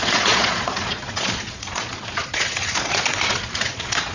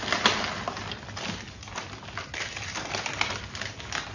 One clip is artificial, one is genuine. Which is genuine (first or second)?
second